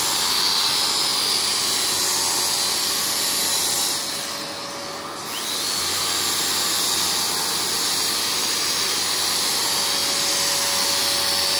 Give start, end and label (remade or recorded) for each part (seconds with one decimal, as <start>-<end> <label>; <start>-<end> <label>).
0.0-11.6 recorded